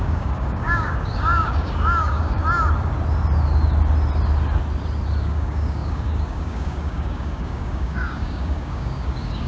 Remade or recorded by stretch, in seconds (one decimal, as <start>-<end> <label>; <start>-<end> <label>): 0.0-2.4 remade; 2.4-5.2 recorded; 5.2-9.5 remade